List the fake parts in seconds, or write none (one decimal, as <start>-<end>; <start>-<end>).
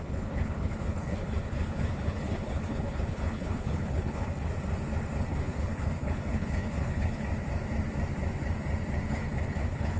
0.0-4.5; 5.3-7.3; 9.1-10.0